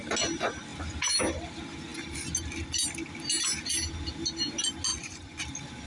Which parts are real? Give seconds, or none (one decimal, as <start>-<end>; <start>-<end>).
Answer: 0.0-4.9; 5.4-5.9